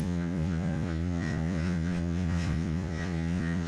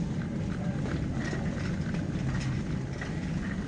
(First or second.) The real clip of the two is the second